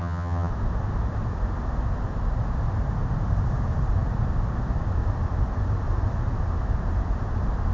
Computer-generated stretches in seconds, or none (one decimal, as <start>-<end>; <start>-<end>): 0.0-0.5